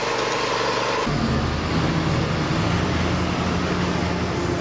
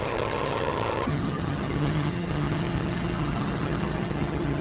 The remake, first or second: second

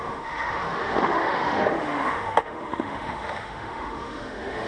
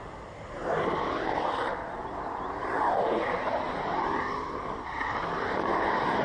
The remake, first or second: first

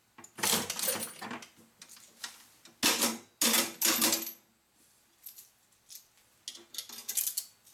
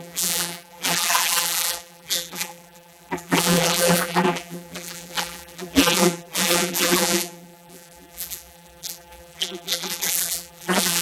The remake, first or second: second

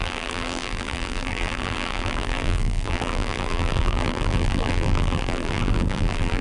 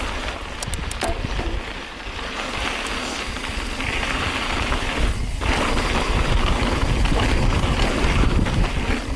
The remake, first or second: first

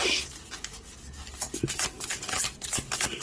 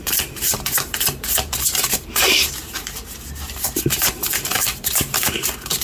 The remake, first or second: second